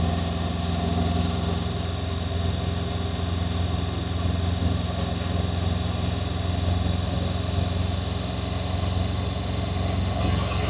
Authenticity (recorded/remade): recorded